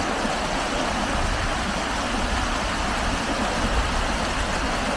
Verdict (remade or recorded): recorded